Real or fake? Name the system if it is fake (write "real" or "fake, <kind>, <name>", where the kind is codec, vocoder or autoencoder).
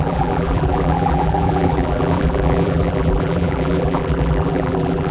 fake, vocoder, BigVGAN v2